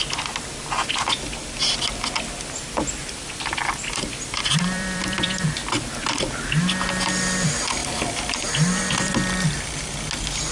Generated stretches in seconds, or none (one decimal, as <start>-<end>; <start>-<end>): 3.0-5.5; 7.8-9.1